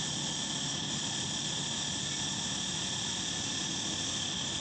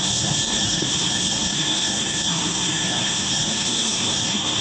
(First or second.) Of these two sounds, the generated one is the second